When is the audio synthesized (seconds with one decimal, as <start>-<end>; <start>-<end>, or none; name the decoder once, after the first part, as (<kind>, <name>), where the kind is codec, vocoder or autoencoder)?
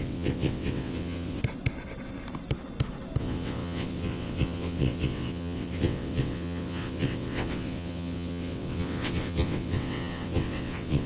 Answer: 0.0-1.4 (vocoder, WaveNeXt); 3.2-11.1